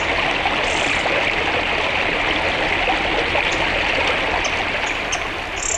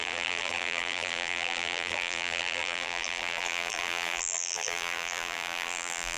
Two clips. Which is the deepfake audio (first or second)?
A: second